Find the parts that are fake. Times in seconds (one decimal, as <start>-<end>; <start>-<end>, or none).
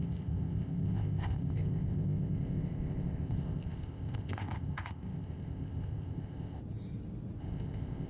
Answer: 0.0-6.6; 7.4-8.1